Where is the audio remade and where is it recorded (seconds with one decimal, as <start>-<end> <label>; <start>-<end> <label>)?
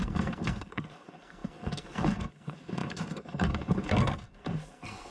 0.0-5.1 remade